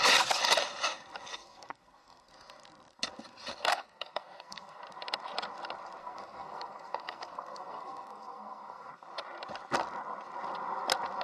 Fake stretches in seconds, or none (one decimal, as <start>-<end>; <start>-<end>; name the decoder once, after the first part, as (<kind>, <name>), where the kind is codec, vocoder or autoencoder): 1.3-2.3 (codec, SNAC); 3.7-4.8; 6.0-8.9